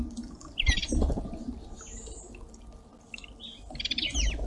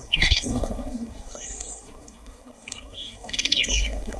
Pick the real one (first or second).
first